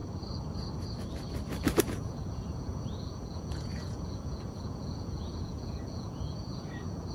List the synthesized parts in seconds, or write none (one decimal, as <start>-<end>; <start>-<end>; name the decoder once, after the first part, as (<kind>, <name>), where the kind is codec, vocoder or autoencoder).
1.8-7.1 (vocoder, Vocos)

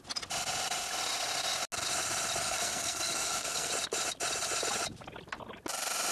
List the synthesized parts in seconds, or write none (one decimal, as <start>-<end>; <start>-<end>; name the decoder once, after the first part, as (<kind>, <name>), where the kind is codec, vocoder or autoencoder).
2.4-3.7 (codec, SNAC)

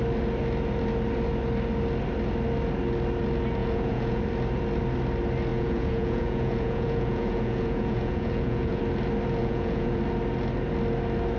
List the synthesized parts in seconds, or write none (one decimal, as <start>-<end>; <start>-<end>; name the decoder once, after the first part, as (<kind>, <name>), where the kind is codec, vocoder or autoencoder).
3.6-4.2 (vocoder, Vocos); 5.5-8.8; 9.4-10.0